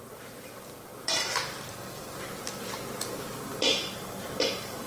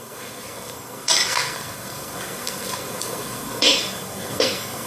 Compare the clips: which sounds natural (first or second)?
first